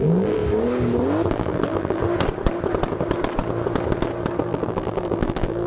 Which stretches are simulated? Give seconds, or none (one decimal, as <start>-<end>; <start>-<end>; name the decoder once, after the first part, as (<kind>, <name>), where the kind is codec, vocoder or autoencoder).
0.0-0.4 (vocoder, BigVGAN v2); 1.3-2.0; 4.4-5.7